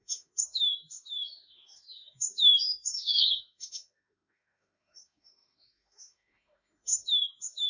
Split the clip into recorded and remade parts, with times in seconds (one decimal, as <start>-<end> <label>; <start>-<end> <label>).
0.0-7.7 remade